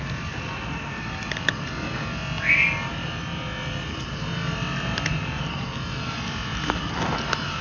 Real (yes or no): yes